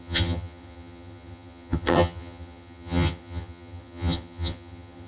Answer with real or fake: fake